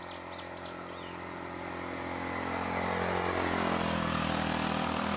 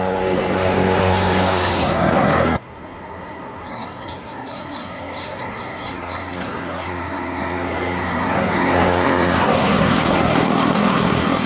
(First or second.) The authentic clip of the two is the first